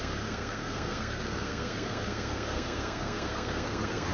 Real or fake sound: fake